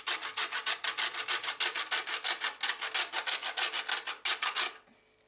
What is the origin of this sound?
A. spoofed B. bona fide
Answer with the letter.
B